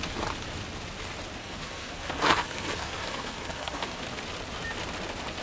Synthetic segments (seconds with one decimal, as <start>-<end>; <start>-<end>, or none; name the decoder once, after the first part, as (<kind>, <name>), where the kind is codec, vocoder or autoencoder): 1.4-4.0 (codec, SNAC)

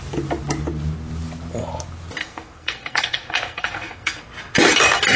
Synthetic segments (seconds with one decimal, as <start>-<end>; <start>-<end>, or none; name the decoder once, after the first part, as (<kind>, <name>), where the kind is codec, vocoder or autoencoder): 2.2-4.2 (codec, SNAC)

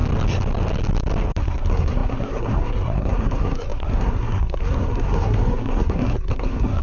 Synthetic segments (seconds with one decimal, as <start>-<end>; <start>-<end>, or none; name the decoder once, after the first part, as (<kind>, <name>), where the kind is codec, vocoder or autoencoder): 1.4-6.8 (codec, SNAC)

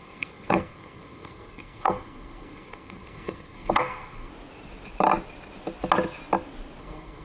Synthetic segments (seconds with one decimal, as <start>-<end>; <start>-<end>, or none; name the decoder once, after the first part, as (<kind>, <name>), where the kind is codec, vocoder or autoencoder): 0.0-4.3 (codec, SNAC); 6.8-7.2